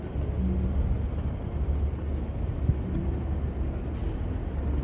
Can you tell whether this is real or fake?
real